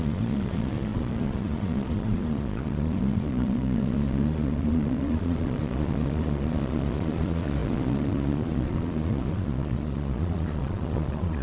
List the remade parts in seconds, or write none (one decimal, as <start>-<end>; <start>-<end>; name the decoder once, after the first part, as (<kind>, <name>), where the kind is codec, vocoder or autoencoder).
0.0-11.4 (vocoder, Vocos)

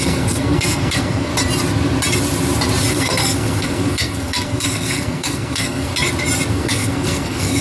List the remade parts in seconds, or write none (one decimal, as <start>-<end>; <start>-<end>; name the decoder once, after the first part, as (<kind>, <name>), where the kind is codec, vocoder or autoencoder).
0.0-1.3 (codec, SNAC); 2.9-5.9; 6.5-7.6

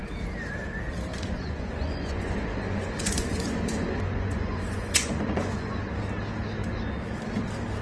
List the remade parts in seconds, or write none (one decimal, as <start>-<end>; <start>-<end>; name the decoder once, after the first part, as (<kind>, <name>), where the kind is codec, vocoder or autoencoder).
1.1-5.8 (vocoder, Vocos)

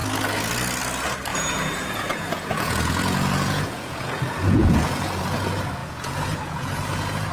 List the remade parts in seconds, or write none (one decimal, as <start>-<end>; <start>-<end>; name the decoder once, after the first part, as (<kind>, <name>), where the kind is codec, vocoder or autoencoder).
1.3-5.2 (vocoder, Vocos); 5.8-7.3

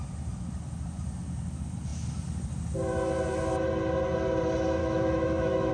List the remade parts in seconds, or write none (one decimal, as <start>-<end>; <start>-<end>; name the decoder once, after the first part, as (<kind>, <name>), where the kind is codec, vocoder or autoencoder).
4.8-5.7 (autoencoder, DAC-VAE)

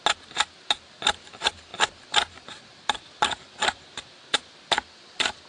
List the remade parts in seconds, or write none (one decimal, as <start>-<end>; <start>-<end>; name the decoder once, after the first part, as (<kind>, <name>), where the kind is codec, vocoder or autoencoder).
none